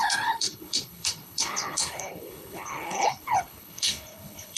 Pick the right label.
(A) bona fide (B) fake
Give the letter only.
B